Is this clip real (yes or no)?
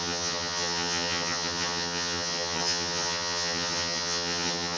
no